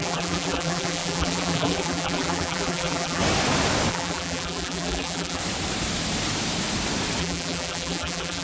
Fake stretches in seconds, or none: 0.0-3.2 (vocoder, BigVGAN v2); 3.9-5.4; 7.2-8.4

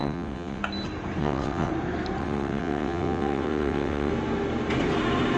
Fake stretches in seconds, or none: 0.0-0.6 (vocoder, WaveNeXt); 1.2-1.7; 2.2-4.1

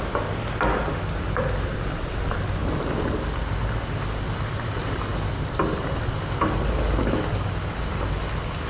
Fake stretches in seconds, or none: none